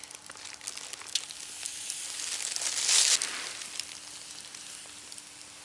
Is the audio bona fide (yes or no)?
yes